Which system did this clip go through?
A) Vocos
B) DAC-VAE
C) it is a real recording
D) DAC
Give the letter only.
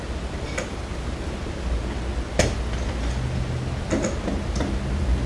C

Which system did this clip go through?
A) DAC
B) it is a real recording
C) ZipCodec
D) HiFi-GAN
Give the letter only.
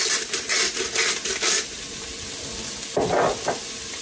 B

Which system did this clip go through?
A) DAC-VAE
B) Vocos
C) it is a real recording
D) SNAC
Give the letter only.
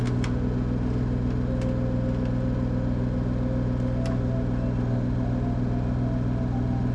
C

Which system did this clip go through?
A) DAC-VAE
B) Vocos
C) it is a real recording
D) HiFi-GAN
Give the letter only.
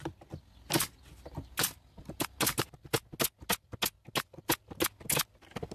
C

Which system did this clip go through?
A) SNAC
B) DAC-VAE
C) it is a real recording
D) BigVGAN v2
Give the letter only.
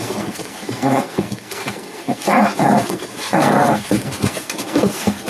A